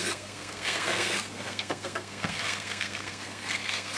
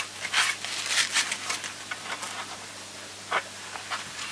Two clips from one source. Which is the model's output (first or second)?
first